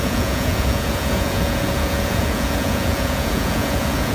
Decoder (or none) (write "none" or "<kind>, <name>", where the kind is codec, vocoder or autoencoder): vocoder, Vocos